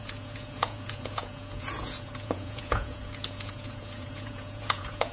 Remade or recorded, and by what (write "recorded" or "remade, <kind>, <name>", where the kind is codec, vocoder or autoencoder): remade, vocoder, Vocos